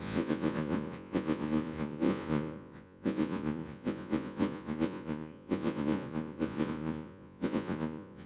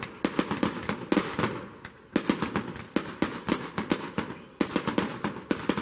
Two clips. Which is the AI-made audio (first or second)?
first